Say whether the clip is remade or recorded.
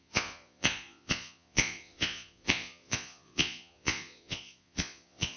remade